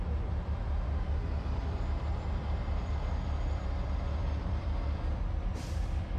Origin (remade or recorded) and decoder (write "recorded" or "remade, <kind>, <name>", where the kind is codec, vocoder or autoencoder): remade, vocoder, BigVGAN v2